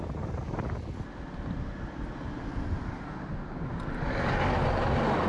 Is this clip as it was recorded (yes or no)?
yes